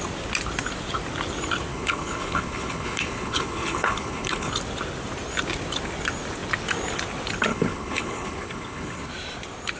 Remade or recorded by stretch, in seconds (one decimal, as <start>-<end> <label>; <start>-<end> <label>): 0.0-1.7 recorded; 1.7-4.5 remade; 4.5-7.5 recorded; 7.5-9.1 remade; 9.1-9.8 recorded